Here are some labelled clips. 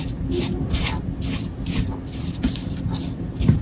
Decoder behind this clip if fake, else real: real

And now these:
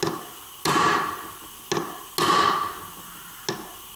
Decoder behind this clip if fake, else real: real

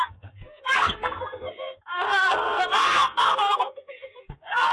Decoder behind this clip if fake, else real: fake, codec, SNAC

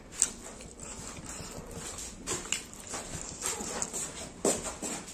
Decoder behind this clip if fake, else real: real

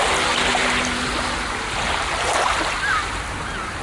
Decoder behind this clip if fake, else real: real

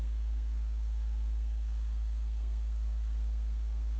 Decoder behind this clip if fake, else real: fake, codec, SNAC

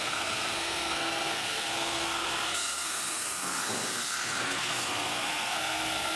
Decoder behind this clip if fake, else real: fake, codec, SNAC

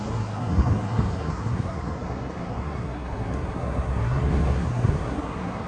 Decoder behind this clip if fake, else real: fake, codec, SNAC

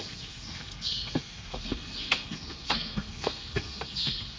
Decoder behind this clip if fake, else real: fake, codec, SNAC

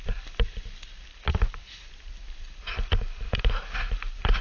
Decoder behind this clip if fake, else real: real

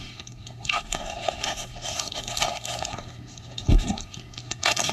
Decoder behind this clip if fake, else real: fake, codec, SNAC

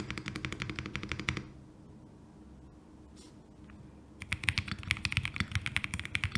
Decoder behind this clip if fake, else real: real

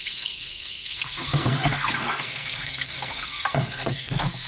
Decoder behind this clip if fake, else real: fake, codec, SNAC